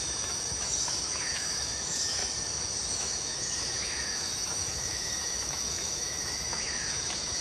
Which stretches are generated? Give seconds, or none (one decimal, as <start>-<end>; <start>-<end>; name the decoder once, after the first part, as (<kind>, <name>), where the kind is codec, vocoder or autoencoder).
0.0-2.2 (autoencoder, DAC-VAE); 2.9-7.4